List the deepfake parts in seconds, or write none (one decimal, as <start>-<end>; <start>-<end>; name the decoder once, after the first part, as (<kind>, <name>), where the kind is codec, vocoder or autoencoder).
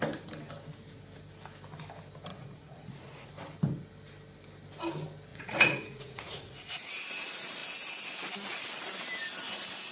2.3-3.3 (vocoder, Vocos); 5.3-6.9